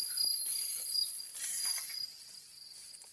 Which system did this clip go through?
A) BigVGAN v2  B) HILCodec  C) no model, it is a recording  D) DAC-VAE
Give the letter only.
C